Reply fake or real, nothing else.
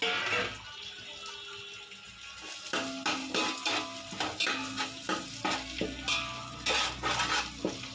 real